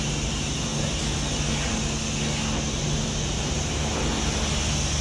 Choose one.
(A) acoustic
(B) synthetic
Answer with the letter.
A